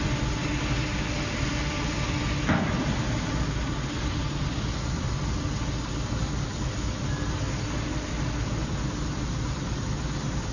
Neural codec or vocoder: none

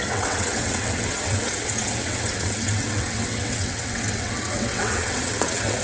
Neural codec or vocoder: vocoder, WaveNeXt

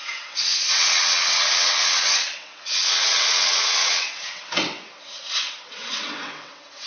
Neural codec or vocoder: vocoder, WaveNeXt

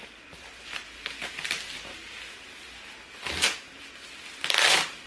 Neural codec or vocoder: none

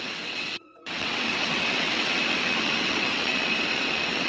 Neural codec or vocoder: vocoder, WaveNeXt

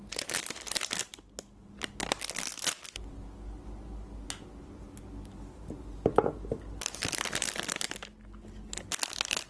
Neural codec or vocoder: none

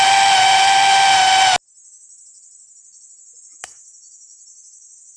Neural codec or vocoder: none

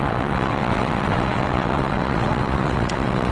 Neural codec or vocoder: vocoder, WaveNeXt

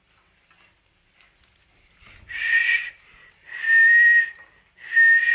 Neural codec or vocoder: none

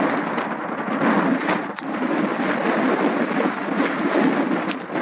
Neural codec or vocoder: none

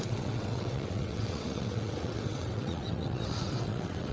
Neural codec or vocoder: vocoder, WaveNeXt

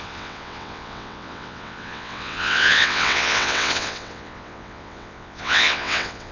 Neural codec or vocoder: vocoder, WaveNeXt